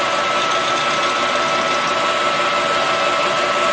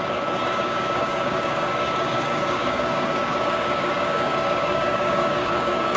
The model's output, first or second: second